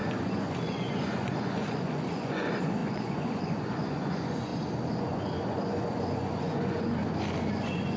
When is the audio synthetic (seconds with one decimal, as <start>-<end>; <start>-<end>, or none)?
0.0-4.5; 5.0-7.0; 7.5-8.0